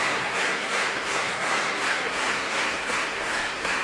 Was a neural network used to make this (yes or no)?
yes